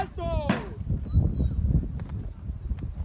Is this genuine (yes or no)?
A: yes